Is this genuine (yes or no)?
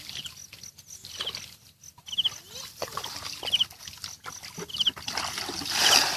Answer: yes